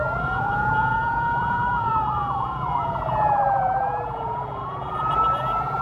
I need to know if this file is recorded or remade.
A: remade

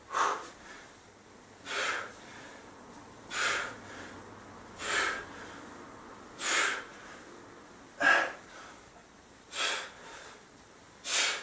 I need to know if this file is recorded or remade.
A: recorded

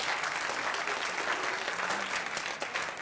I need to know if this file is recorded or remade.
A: recorded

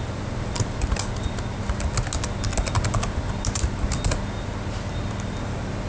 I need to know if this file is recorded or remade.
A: recorded